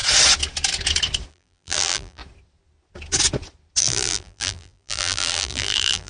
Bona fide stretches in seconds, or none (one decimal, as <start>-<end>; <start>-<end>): 0.0-1.3; 2.2-3.8